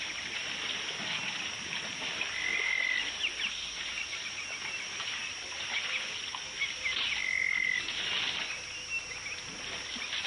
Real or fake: real